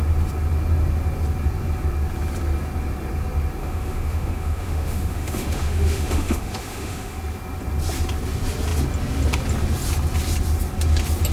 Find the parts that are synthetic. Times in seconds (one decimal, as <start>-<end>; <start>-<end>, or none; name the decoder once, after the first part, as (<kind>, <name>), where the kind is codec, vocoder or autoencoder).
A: 3.6-7.2 (autoencoder, DAC-VAE)